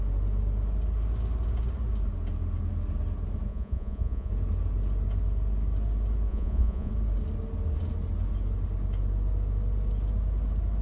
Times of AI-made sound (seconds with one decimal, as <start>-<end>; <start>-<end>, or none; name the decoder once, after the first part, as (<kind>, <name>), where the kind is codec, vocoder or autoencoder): 3.5-4.3 (vocoder, Vocos); 6.3-6.9